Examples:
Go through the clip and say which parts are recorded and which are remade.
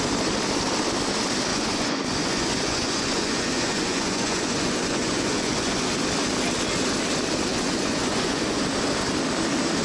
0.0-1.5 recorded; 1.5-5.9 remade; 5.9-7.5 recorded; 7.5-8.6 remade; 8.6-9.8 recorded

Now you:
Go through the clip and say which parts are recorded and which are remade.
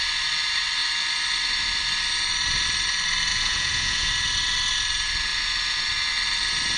0.0-3.3 recorded; 3.3-4.1 remade; 4.1-6.8 recorded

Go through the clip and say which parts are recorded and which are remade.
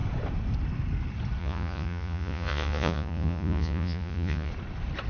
0.0-1.4 recorded; 1.4-4.5 remade; 4.5-5.1 recorded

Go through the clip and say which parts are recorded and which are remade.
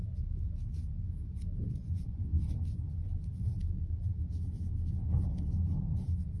0.0-1.7 recorded; 1.7-2.3 remade; 2.3-6.4 recorded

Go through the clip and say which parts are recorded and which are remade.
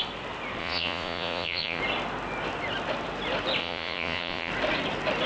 0.0-0.6 recorded; 0.6-1.8 remade; 1.8-3.6 recorded; 3.6-4.5 remade; 4.5-5.3 recorded